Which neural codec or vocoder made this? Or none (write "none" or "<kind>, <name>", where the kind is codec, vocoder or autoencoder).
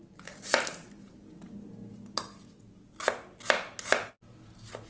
none